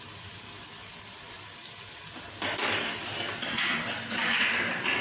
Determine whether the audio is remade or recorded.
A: recorded